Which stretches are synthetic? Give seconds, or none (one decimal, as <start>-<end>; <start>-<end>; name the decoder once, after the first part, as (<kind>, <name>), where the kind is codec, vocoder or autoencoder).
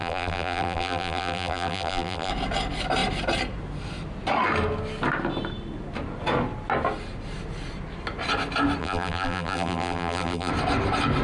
0.0-2.3 (vocoder, BigVGAN v2); 8.8-10.5